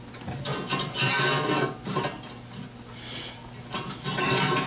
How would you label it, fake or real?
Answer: real